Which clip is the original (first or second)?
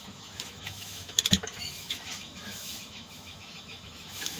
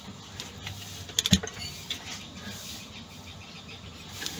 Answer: second